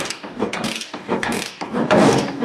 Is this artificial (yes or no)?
yes